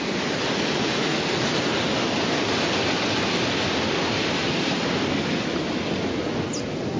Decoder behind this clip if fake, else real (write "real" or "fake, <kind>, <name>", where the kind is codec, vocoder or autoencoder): real